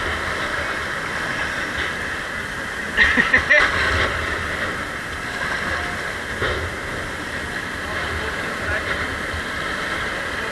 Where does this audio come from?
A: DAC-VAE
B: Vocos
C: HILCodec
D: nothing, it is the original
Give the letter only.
D